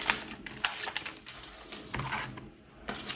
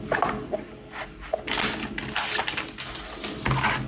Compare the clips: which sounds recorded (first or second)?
second